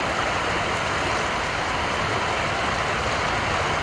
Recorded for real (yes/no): yes